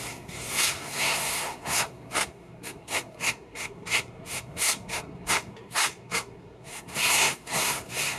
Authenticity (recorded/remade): remade